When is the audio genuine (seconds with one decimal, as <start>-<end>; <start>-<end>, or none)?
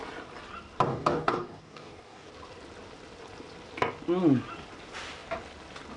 0.0-0.9; 2.3-6.0